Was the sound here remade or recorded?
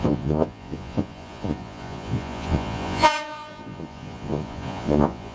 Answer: remade